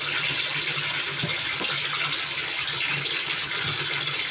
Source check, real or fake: real